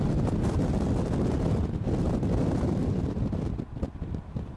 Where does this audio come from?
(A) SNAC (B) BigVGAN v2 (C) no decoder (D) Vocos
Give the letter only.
C